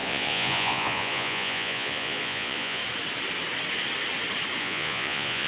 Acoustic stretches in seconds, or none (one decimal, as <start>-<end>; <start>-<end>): 2.8-4.6